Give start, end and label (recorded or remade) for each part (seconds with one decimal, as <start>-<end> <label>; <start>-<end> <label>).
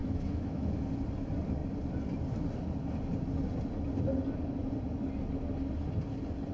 0.0-0.8 remade; 0.8-6.5 recorded